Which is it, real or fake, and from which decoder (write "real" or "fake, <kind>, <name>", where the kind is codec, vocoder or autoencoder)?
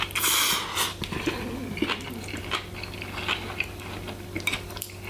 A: real